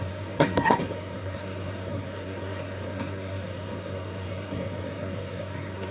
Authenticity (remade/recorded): remade